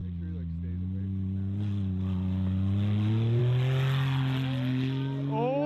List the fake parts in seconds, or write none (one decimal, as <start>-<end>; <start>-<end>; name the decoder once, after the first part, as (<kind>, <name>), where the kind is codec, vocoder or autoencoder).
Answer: none